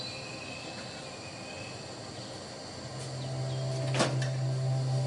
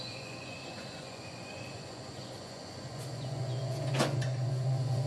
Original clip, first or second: first